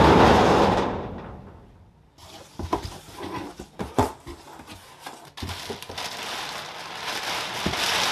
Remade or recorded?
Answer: recorded